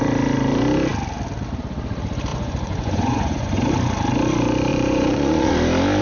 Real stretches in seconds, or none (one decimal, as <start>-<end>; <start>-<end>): 0.0-2.3; 3.7-4.7; 5.5-6.0